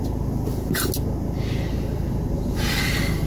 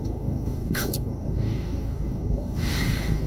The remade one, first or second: second